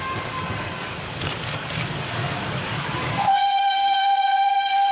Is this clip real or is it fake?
fake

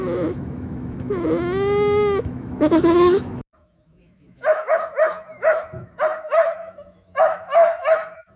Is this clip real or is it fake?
fake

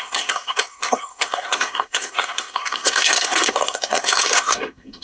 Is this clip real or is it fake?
fake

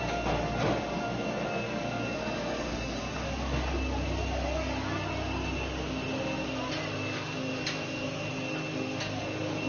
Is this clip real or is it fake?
real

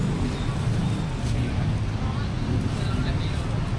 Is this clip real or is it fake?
real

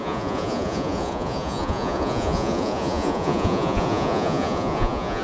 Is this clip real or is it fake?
fake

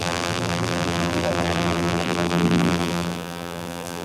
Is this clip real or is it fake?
fake